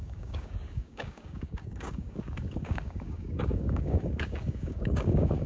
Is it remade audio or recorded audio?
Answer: remade